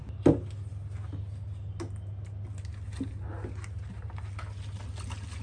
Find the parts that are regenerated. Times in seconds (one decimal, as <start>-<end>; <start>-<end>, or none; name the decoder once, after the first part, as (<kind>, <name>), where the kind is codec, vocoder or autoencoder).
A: none